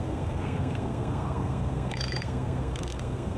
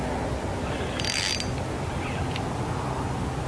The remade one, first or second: first